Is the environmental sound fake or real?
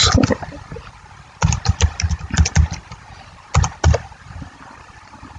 real